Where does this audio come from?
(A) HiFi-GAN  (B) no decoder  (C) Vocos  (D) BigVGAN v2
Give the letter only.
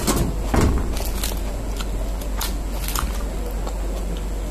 B